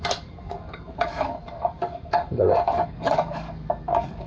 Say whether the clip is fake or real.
fake